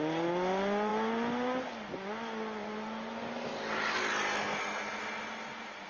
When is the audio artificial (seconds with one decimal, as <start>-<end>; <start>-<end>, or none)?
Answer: none